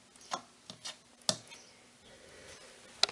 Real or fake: real